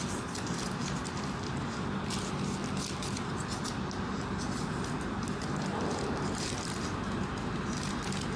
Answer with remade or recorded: recorded